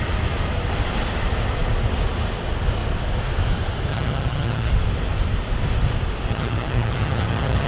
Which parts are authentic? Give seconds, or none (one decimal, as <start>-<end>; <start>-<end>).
0.0-3.9; 4.7-6.3